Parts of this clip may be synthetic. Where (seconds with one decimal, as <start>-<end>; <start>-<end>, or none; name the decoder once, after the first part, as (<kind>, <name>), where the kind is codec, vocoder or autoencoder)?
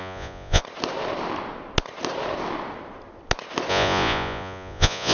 0.0-0.6 (vocoder, Vocos); 3.7-5.1